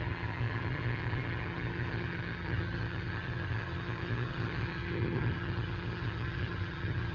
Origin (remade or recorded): remade